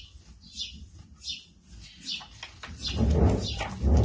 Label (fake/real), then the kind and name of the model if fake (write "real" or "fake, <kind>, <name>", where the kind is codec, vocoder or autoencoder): real